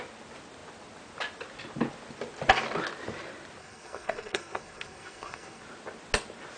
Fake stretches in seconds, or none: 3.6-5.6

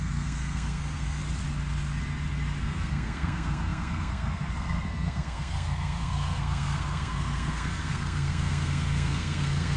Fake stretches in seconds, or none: 0.0-1.2; 2.6-9.8